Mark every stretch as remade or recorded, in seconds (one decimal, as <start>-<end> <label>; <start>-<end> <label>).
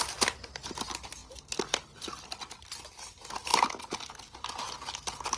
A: 0.0-5.4 recorded